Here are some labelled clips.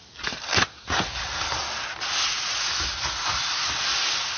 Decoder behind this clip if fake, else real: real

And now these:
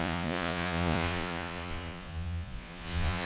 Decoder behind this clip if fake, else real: fake, vocoder, Vocos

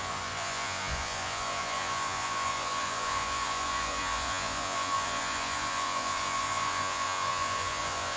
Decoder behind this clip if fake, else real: fake, vocoder, Vocos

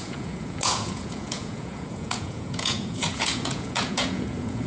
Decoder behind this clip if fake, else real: fake, vocoder, Vocos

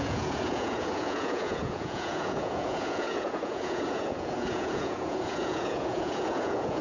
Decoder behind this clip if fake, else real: fake, vocoder, Vocos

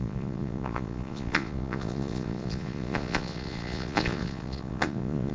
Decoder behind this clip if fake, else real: fake, vocoder, Vocos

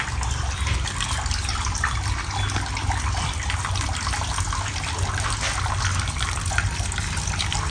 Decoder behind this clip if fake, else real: real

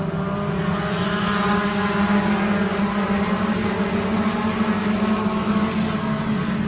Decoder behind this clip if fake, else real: real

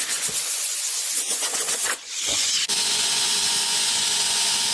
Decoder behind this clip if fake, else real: fake, vocoder, Vocos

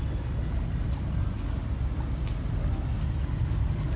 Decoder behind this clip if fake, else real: real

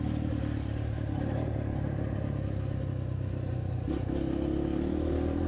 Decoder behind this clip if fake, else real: real